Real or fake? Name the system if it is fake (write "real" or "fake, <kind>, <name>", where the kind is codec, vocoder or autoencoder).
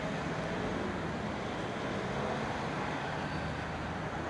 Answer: real